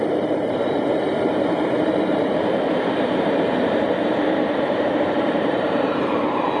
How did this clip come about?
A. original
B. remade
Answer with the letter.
B